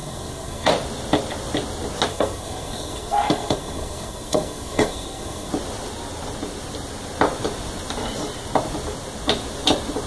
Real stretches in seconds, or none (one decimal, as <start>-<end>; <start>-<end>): 0.7-2.1; 5.5-10.1